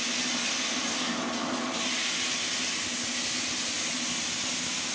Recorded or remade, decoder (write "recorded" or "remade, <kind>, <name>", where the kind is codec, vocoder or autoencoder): recorded